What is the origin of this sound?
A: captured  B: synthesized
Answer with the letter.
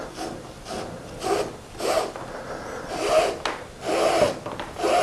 A